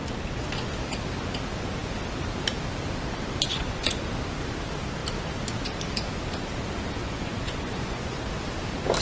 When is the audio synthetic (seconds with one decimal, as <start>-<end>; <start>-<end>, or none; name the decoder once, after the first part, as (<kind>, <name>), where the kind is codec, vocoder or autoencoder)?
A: 3.5-4.0 (vocoder, Vocos); 7.0-8.2